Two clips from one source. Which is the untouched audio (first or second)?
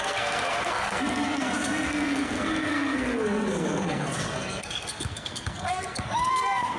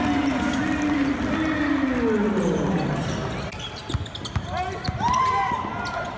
second